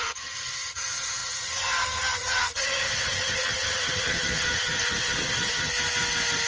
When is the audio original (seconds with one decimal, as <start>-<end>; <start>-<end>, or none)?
5.7-6.5